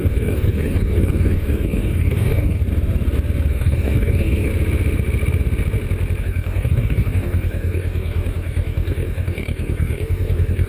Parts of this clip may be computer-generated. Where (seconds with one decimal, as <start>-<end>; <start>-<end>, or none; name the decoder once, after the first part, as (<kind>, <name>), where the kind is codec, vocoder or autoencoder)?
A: 0.0-2.6 (codec, DAC); 3.5-4.5; 6.2-10.7